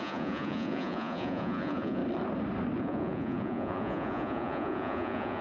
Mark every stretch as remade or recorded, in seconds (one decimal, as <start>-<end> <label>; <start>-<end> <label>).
0.0-2.0 remade; 2.0-2.8 recorded; 2.8-5.4 remade